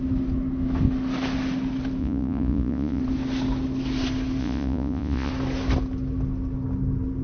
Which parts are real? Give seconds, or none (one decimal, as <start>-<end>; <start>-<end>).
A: 0.0-2.0; 3.0-4.4; 5.3-7.2